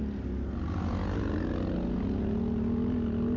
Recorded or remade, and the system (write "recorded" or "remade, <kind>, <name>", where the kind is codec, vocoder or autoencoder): recorded